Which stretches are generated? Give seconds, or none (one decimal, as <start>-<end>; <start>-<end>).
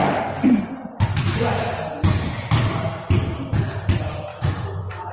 4.3-5.1